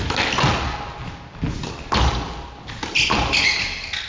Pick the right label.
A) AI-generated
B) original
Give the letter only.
B